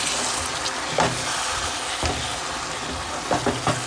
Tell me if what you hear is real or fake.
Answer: real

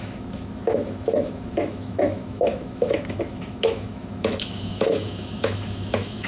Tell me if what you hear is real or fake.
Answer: fake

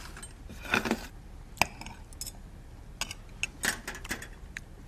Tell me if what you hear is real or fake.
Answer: real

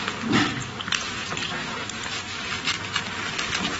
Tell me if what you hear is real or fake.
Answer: real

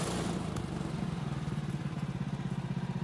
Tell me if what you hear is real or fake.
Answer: real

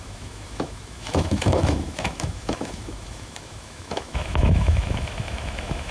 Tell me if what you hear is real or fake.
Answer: fake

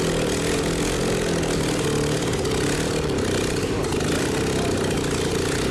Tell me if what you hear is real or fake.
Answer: real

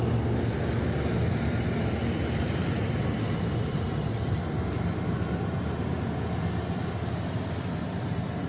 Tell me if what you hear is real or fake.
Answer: real